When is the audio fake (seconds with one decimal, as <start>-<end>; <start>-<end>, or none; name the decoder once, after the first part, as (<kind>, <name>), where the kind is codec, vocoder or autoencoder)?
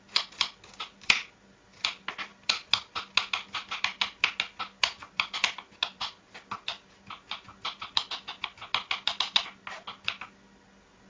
none